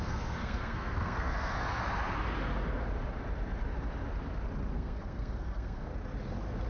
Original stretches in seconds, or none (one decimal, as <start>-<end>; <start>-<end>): 1.8-4.7; 5.9-6.7